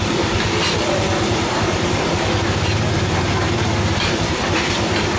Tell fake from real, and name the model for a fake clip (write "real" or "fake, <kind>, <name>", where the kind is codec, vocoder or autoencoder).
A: fake, vocoder, BigVGAN v2